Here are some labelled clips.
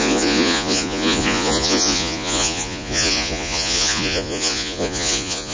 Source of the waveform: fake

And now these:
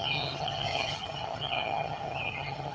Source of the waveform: fake